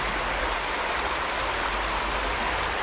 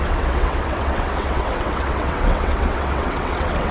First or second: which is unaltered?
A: first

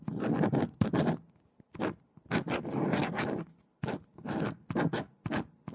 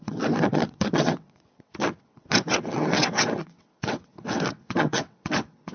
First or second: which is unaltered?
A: first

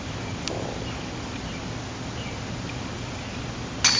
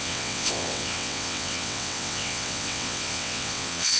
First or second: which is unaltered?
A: first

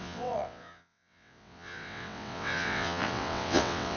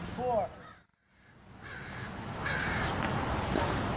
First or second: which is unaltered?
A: second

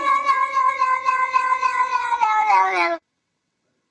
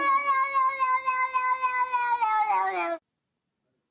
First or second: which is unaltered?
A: second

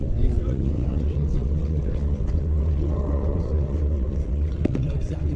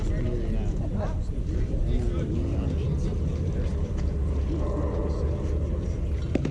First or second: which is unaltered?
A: second